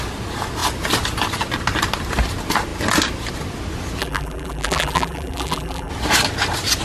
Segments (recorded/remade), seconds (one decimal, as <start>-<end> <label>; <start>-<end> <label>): 0.0-4.0 recorded; 4.0-5.9 remade; 5.9-6.8 recorded